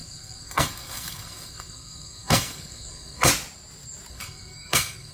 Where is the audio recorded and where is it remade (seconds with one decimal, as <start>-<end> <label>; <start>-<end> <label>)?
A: 0.0-3.3 remade; 3.3-4.1 recorded; 4.1-5.1 remade